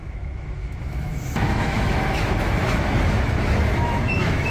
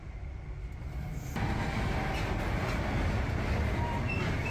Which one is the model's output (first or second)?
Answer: first